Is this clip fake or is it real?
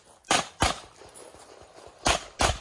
real